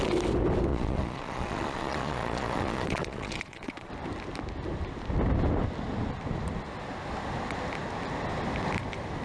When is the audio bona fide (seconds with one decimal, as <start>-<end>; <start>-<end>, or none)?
0.0-0.7; 3.9-9.2